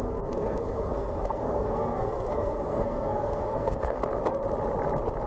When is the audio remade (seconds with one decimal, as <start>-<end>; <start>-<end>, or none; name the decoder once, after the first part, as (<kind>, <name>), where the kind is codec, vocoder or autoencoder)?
0.0-4.0 (codec, SNAC)